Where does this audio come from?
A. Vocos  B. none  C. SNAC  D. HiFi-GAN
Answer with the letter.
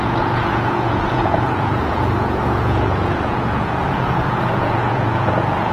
A